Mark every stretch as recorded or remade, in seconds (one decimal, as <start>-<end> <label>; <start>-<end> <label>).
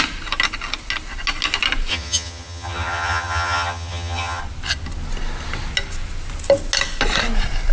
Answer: 0.0-1.9 recorded; 1.9-4.4 remade; 4.4-7.7 recorded